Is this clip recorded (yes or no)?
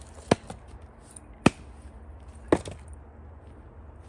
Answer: yes